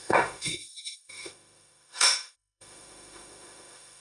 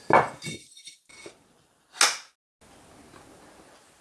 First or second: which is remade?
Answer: first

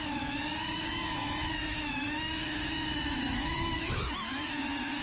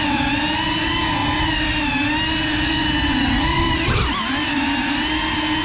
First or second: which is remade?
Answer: first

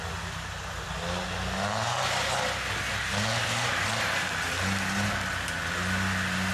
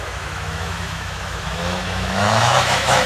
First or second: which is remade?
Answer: second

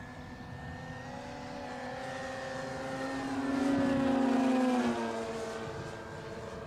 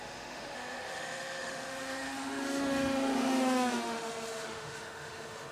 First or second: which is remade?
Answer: second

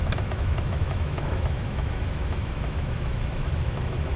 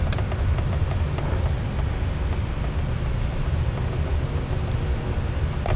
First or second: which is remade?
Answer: first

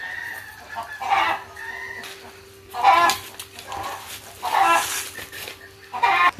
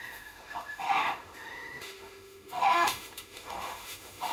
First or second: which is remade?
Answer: second